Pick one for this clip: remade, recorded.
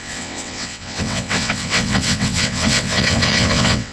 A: remade